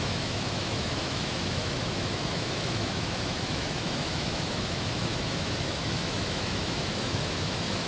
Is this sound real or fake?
fake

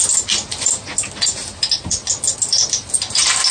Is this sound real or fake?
real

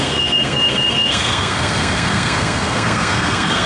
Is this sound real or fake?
fake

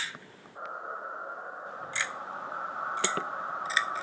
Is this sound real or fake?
real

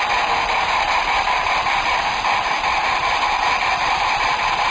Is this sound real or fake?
real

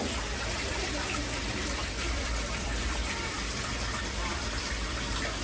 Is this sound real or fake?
fake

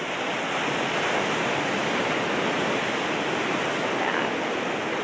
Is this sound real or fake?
real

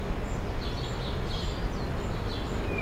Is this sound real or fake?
real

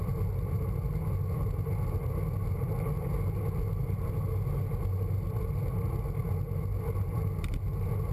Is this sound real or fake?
real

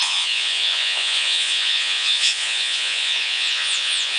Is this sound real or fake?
fake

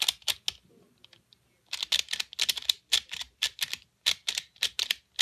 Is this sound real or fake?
real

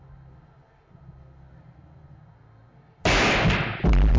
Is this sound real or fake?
real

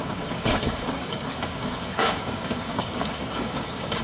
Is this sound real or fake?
fake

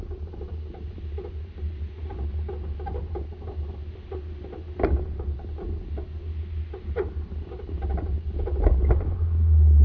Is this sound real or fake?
real